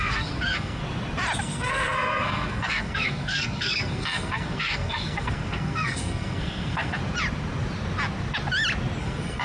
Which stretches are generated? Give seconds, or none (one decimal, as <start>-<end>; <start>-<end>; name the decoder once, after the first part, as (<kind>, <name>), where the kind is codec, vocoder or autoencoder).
0.0-0.8 (codec, SNAC); 1.4-7.0; 9.0-9.4